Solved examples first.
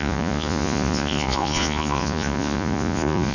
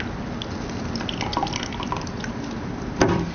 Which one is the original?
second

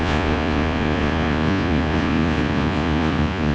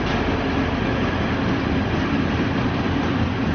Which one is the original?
second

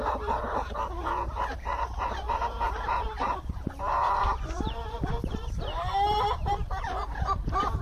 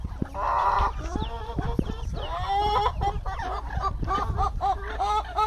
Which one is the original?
second